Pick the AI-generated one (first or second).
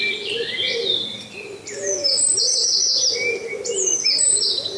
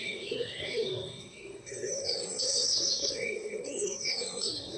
second